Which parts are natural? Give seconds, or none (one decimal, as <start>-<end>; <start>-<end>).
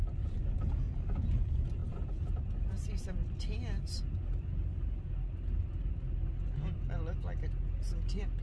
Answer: 0.0-8.4